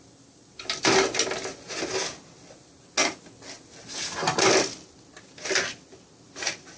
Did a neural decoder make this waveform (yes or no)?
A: no